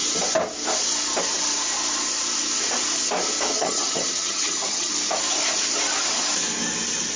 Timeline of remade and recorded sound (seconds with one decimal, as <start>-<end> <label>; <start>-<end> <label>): 0.0-3.5 recorded; 3.5-4.9 remade; 4.9-7.2 recorded